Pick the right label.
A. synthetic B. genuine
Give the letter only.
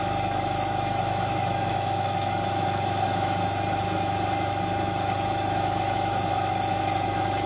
A